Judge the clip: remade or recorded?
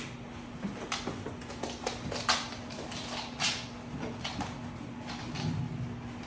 recorded